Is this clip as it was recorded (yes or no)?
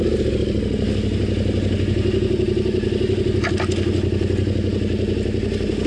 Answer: yes